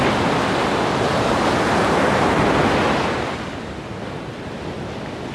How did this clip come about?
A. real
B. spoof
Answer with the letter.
A